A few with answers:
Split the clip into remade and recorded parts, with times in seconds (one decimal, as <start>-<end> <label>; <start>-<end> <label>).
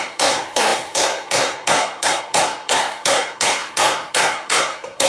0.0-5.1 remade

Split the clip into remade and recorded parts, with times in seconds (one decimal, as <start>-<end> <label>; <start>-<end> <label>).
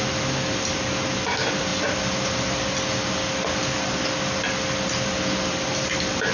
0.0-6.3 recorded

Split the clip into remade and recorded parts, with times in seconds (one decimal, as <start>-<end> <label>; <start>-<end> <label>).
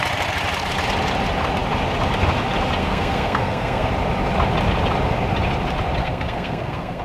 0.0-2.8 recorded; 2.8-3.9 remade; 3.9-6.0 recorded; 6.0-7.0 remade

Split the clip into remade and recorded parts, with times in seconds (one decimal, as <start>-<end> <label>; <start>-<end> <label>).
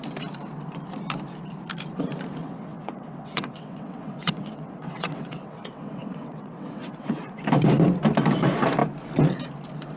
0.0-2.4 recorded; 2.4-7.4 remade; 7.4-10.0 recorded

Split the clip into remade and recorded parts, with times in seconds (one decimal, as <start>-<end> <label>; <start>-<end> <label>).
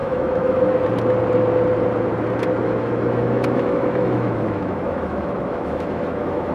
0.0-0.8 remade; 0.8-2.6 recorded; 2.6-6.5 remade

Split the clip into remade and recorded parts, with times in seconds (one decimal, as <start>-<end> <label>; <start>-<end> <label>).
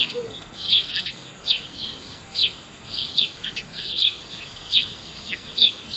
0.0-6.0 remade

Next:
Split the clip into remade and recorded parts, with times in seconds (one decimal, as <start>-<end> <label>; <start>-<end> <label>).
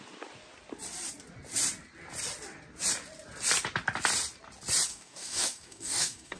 0.0-4.9 recorded; 4.9-6.4 remade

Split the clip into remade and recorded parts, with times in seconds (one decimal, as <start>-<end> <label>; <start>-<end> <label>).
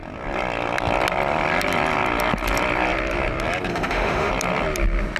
0.0-3.7 recorded; 3.7-4.3 remade; 4.3-5.2 recorded